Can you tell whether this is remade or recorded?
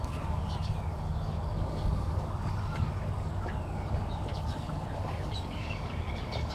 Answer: remade